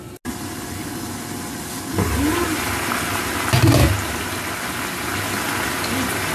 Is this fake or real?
real